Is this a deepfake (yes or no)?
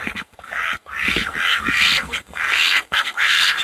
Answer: yes